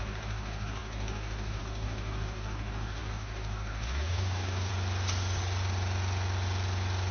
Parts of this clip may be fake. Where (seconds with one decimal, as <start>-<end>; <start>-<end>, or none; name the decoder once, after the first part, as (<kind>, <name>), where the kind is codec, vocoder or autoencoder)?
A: 0.0-4.7 (codec, DAC)